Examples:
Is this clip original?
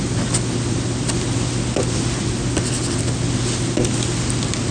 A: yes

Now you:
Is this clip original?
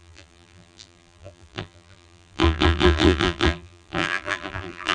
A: no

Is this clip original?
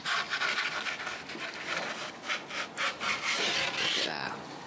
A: yes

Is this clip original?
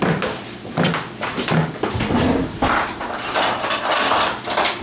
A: no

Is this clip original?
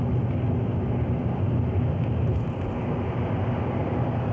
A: yes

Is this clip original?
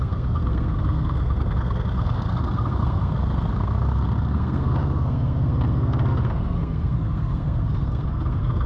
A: no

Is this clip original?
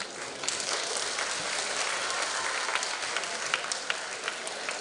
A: yes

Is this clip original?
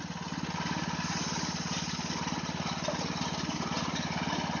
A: yes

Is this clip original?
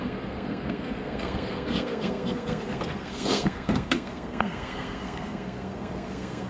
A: no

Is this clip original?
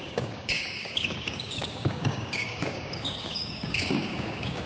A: no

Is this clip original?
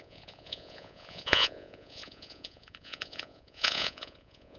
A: no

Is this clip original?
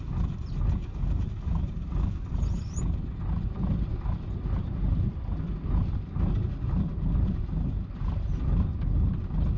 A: yes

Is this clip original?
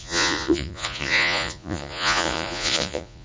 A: no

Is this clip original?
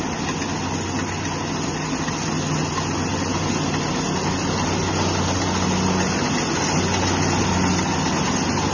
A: yes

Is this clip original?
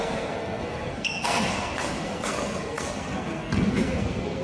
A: no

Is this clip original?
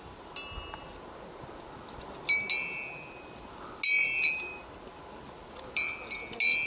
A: yes